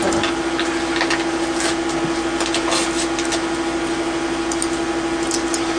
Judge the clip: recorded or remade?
recorded